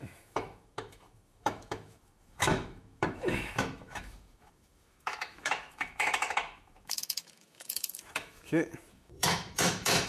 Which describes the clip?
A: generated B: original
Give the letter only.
A